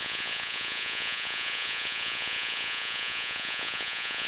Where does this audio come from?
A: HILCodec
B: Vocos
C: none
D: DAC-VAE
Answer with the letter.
B